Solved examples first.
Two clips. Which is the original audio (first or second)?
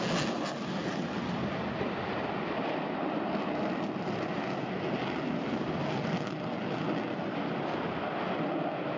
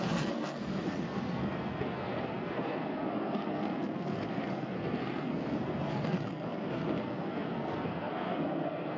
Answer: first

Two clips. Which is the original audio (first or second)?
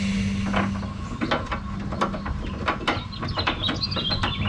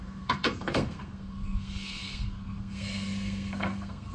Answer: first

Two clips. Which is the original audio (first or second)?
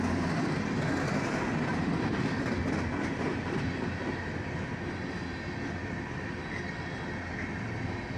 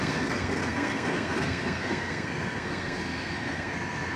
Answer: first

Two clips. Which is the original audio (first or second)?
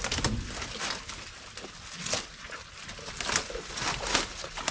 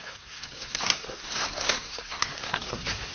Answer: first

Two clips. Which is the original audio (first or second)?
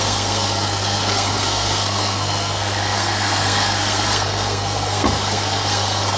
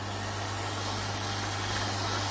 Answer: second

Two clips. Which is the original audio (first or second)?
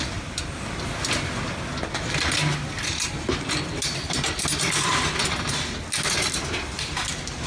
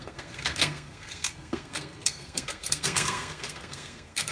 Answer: first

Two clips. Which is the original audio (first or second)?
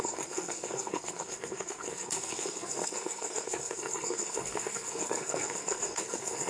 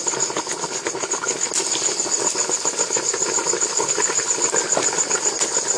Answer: second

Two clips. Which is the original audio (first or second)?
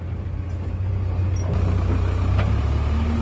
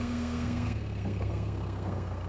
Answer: first